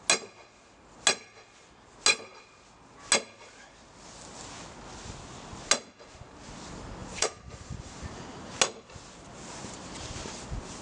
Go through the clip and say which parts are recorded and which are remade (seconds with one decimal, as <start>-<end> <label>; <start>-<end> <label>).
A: 0.0-7.0 recorded; 7.0-8.6 remade; 8.6-10.8 recorded